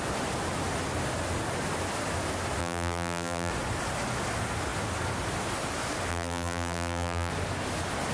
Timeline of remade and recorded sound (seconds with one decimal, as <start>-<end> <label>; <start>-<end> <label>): 0.0-2.6 recorded; 2.6-3.5 remade; 3.5-6.1 recorded; 6.1-7.3 remade; 7.3-8.1 recorded